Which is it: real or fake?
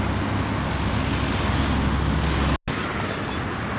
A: real